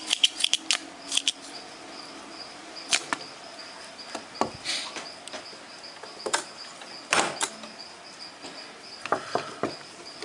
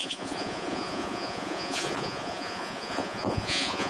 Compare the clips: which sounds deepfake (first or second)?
second